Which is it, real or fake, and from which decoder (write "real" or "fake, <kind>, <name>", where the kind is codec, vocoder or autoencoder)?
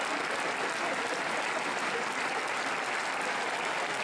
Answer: real